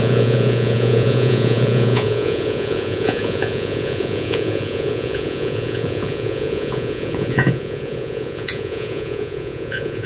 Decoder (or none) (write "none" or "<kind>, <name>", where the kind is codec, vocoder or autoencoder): vocoder, Vocos